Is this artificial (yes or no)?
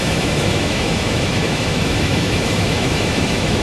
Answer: yes